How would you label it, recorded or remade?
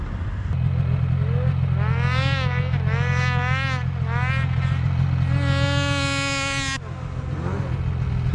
recorded